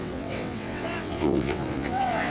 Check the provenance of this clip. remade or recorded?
remade